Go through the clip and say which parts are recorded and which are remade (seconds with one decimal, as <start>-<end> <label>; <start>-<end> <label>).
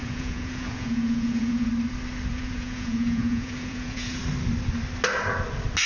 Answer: 0.0-1.7 remade; 1.7-2.3 recorded; 2.3-4.2 remade; 4.2-5.9 recorded